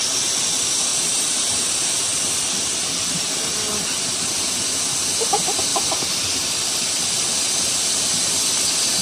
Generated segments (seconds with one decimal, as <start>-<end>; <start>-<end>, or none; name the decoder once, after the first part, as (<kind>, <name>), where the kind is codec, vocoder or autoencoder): 0.9-1.6 (vocoder, BigVGAN v2)